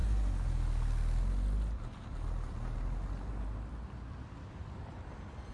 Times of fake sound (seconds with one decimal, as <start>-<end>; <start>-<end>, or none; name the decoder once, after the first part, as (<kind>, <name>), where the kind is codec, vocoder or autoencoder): none